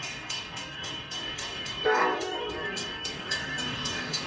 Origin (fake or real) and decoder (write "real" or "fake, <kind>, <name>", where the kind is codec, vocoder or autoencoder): fake, codec, DAC